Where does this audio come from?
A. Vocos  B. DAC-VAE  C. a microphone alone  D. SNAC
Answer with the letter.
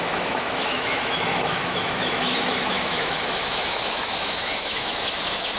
B